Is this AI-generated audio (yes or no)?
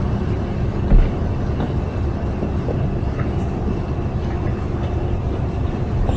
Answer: no